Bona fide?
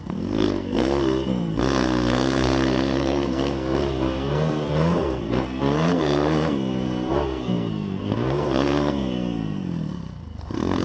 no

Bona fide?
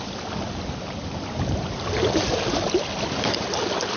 yes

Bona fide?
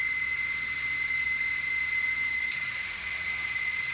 no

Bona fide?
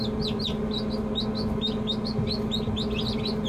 yes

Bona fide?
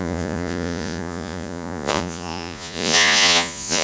no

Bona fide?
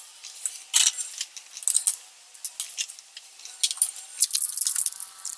yes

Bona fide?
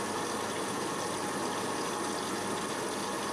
yes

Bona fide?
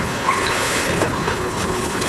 no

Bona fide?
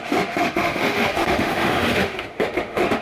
no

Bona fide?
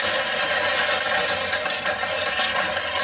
yes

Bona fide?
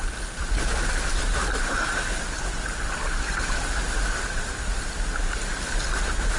yes